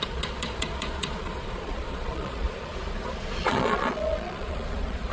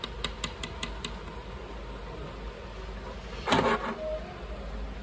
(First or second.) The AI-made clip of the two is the first